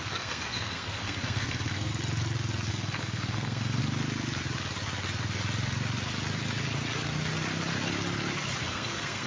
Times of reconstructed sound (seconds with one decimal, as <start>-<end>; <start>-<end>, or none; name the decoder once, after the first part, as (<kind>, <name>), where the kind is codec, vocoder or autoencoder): 0.0-1.9 (codec, SNAC); 2.7-3.8; 8.6-9.3